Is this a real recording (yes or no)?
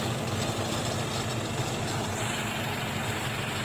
yes